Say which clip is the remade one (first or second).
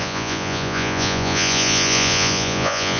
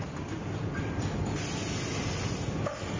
first